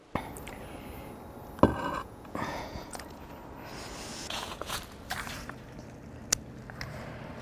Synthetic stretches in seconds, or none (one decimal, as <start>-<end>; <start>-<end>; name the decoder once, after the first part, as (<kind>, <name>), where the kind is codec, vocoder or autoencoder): 1.7-3.3 (vocoder, Vocos); 4.1-4.8